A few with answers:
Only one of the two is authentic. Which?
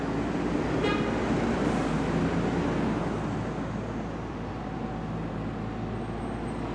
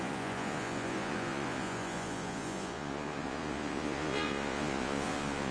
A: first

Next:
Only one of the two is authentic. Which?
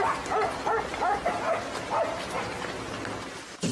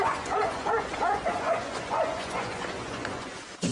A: first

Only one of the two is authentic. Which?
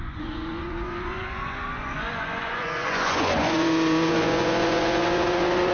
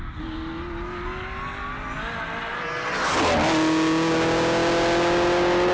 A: second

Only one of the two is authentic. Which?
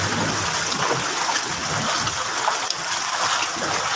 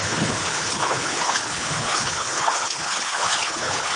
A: first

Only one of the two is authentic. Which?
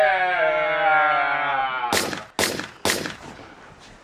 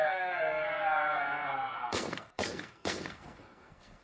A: first